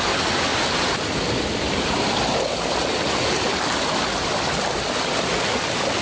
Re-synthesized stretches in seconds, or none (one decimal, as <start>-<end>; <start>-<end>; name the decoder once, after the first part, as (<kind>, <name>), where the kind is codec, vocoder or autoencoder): none